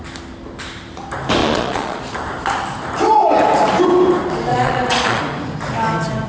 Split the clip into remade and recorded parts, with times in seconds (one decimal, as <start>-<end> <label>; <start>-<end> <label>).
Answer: 0.0-1.4 recorded; 1.4-2.0 remade; 2.0-4.5 recorded; 4.5-5.2 remade; 5.2-6.3 recorded